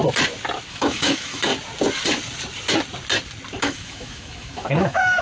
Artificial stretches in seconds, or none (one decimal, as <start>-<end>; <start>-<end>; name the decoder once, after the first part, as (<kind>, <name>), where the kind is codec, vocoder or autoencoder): 0.7-1.5 (autoencoder, DAC-VAE); 3.6-5.2

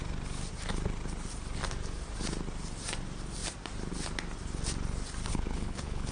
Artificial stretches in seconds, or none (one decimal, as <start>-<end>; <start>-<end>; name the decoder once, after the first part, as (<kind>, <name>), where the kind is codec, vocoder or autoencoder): 5.3-6.1 (codec, HILCodec)

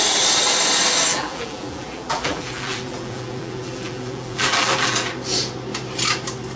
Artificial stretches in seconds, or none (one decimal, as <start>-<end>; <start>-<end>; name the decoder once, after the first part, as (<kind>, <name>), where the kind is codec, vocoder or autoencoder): 1.1-5.1 (vocoder, BigVGAN v2)

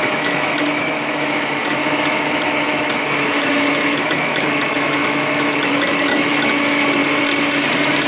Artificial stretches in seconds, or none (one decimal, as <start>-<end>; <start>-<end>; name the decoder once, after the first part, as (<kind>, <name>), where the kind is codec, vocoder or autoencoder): 0.0-7.0 (autoencoder, DAC-VAE)

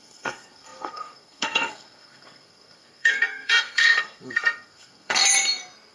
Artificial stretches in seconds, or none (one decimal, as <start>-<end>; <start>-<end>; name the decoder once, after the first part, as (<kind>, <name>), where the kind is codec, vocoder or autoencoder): 0.0-5.2 (codec, SNAC)

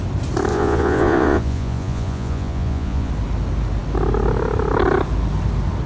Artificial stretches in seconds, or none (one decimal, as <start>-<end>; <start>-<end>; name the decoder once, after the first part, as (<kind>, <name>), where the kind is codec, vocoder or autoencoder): 0.5-3.1 (vocoder, Vocos)

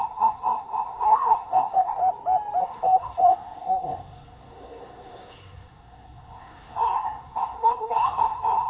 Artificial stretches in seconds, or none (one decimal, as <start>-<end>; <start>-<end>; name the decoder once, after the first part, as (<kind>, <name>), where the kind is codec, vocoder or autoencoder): 0.0-2.0 (codec, SNAC); 2.6-8.7

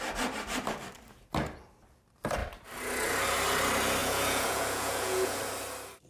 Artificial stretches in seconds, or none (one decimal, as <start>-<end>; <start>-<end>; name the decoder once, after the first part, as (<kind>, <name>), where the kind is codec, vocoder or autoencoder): 4.0-5.4 (vocoder, Vocos)